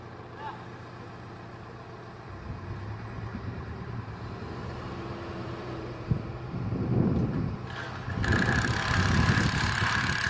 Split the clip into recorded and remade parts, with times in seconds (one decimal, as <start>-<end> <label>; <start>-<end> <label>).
0.0-3.3 recorded; 3.3-6.3 remade; 6.3-10.3 recorded